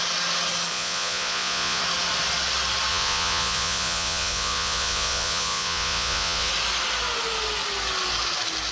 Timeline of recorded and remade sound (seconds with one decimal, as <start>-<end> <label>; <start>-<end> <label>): 0.0-0.7 recorded; 0.7-1.8 remade; 1.8-2.9 recorded; 2.9-6.5 remade; 6.5-8.7 recorded